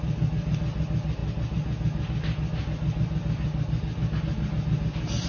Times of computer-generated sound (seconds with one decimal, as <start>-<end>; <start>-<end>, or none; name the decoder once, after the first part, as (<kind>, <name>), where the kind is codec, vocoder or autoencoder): none